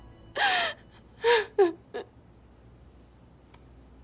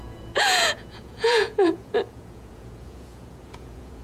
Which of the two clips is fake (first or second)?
second